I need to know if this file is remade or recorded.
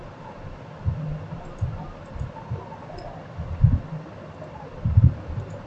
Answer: recorded